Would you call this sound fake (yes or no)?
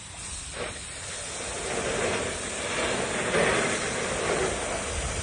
no